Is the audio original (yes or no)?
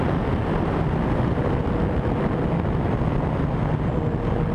yes